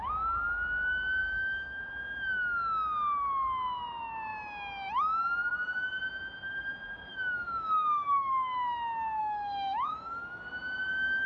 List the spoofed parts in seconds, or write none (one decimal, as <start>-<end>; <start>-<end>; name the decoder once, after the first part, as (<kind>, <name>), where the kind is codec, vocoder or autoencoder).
1.2-1.8 (autoencoder, DAC-VAE); 7.1-8.3; 9.2-10.4